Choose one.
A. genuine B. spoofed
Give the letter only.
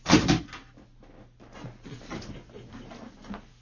A